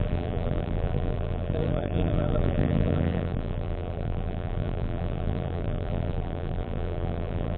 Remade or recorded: remade